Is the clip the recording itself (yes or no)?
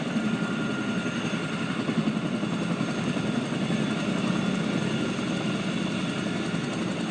yes